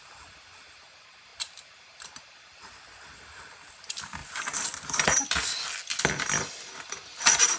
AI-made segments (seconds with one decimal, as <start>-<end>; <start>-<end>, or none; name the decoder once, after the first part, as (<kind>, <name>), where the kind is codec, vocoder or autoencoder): none